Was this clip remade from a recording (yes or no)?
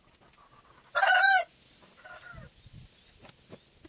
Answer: no